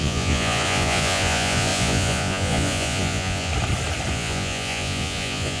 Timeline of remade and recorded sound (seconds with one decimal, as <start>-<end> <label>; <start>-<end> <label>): 0.0-3.5 remade; 3.5-4.1 recorded; 4.1-5.6 remade